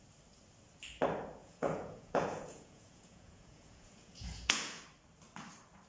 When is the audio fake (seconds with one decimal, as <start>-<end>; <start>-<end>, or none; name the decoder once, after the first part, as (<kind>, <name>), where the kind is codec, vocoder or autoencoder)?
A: 1.4-4.8 (vocoder, Vocos)